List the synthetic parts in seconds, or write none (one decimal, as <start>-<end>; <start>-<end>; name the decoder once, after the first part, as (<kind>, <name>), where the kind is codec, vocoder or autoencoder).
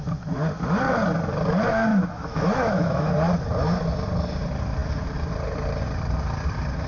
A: 1.9-3.1 (autoencoder, DAC-VAE)